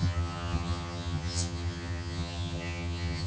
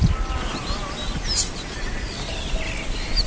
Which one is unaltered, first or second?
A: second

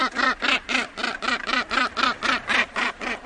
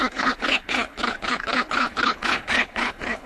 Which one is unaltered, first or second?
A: first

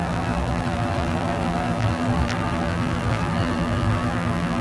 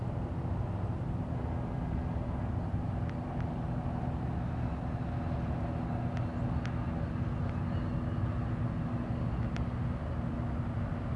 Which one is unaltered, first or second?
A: second